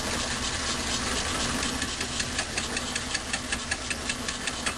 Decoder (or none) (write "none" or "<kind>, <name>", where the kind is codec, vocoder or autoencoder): none